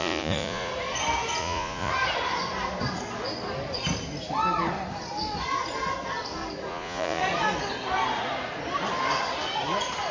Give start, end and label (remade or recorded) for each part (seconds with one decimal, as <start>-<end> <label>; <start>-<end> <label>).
0.0-0.7 remade; 0.7-1.4 recorded; 1.4-1.9 remade; 1.9-6.7 recorded; 6.7-7.2 remade; 7.2-10.1 recorded

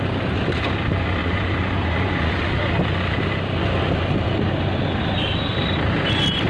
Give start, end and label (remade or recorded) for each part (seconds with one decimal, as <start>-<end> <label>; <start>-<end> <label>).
0.0-1.2 recorded; 1.2-2.4 remade; 2.4-6.5 recorded

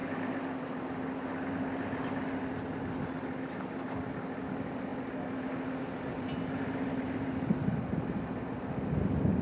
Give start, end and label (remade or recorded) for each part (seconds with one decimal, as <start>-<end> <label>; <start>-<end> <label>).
0.0-9.4 recorded

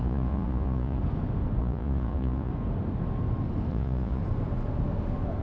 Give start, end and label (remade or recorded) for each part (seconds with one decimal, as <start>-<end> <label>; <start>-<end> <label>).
0.0-1.0 remade; 1.0-1.6 recorded; 1.6-2.5 remade; 2.5-3.7 recorded; 3.7-4.2 remade; 4.2-5.4 recorded

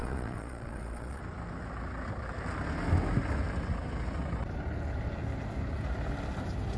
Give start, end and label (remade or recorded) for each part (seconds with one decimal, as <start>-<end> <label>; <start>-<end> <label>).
0.0-1.2 remade; 1.2-6.8 recorded

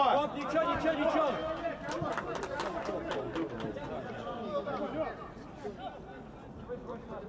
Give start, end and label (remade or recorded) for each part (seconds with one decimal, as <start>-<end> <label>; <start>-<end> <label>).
0.0-7.3 recorded